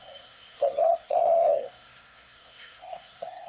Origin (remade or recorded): remade